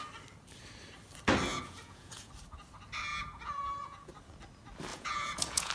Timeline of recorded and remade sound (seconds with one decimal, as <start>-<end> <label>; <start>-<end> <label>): 0.0-1.5 recorded; 1.5-2.3 remade; 2.3-3.1 recorded; 3.1-4.1 remade; 4.1-4.9 recorded; 4.9-5.7 remade